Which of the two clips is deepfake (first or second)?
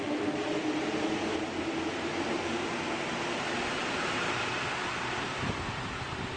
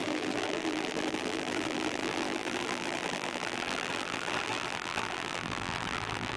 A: second